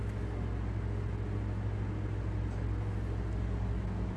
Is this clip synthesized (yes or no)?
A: no